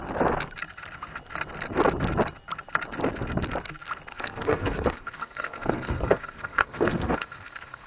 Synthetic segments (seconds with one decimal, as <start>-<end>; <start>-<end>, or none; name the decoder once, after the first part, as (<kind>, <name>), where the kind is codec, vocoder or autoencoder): 4.1-7.9 (codec, SNAC)